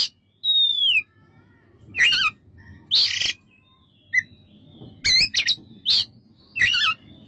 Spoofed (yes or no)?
no